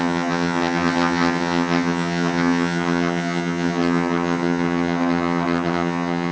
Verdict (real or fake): fake